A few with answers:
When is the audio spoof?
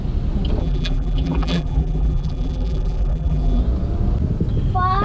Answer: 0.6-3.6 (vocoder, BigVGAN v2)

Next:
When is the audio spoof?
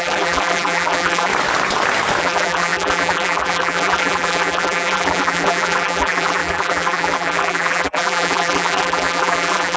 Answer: 0.0-1.3 (vocoder, BigVGAN v2); 2.2-9.8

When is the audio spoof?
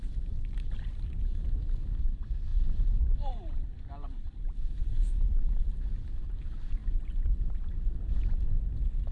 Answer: 0.0-1.4 (vocoder, BigVGAN v2); 2.0-9.1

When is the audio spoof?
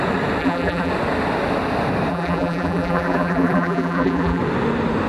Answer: 0.4-0.9 (vocoder, BigVGAN v2); 2.1-4.4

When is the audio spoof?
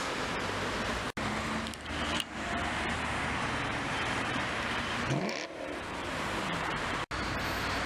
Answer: 3.7-7.1 (vocoder, BigVGAN v2)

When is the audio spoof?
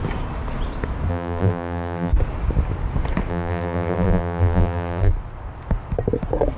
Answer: 1.1-2.1 (vocoder, BigVGAN v2); 3.3-5.1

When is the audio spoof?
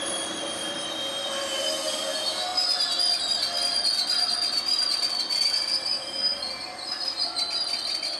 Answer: 0.0-2.5 (vocoder, BigVGAN v2); 3.2-8.2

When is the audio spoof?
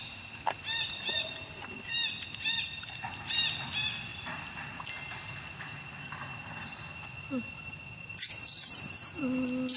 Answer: none